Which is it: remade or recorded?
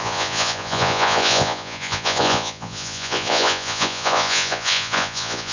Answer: remade